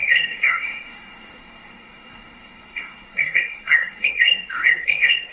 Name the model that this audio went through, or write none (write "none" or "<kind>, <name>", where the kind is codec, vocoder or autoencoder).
codec, SNAC